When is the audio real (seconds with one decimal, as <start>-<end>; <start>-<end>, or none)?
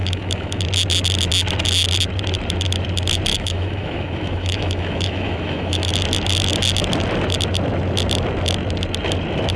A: 0.6-3.3; 5.9-9.6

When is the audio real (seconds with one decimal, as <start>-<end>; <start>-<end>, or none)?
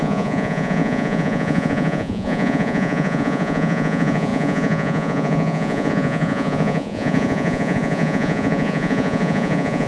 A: none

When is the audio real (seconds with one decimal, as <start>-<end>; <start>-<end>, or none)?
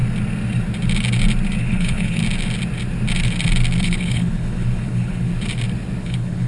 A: 0.0-1.6; 2.2-3.8; 5.3-6.0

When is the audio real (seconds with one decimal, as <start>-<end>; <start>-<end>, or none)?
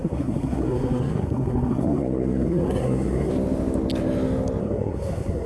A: 3.3-4.6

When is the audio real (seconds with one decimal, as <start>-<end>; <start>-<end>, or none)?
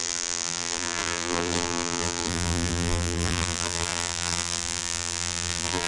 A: none